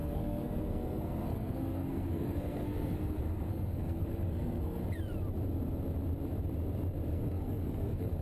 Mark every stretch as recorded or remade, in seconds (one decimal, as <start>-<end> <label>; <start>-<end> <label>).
0.0-4.8 remade; 4.8-7.1 recorded; 7.1-8.2 remade